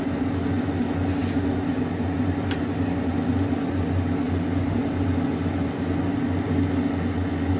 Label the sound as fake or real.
real